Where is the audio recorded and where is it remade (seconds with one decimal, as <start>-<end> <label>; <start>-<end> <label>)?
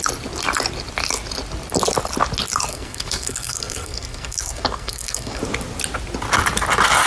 0.0-2.7 recorded; 2.7-5.4 remade; 5.4-7.1 recorded